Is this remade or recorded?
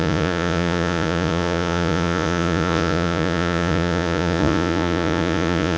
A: remade